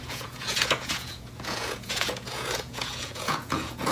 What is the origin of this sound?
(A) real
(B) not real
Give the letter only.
B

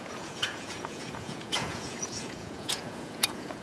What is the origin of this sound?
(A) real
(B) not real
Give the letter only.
B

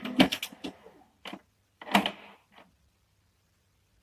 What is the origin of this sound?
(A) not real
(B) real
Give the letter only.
B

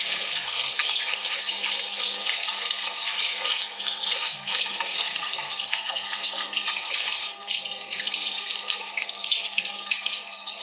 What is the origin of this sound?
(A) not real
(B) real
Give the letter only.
A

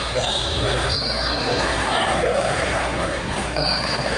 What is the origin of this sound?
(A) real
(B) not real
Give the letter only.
B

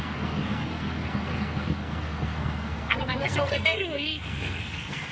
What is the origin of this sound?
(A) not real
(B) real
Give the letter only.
A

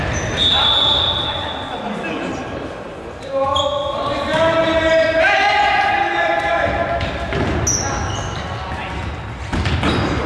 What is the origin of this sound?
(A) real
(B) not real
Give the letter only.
A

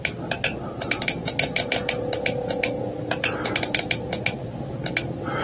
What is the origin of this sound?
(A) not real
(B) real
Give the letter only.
B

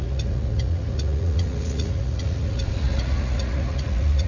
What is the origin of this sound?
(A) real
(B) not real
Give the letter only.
B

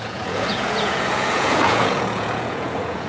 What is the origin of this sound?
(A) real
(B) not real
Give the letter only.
B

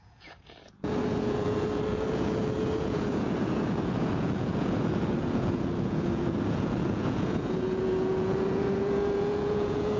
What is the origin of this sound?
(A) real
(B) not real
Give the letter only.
B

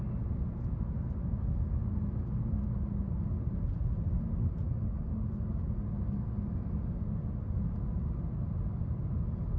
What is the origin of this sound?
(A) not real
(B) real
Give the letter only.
B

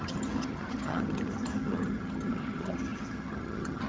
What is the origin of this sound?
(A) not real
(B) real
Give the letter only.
A